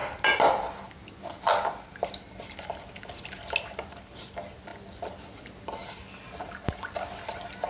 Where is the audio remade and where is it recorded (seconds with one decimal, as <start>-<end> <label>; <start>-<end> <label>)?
0.0-7.7 recorded